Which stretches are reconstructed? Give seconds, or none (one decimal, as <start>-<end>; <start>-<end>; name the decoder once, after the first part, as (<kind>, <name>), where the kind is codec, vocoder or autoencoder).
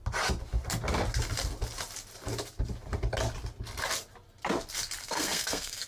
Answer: 5.0-5.9 (codec, SNAC)